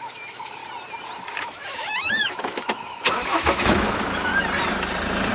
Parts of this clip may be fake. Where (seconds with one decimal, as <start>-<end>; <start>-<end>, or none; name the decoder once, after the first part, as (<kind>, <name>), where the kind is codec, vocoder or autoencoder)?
0.0-0.6 (autoencoder, DAC-VAE); 1.4-4.3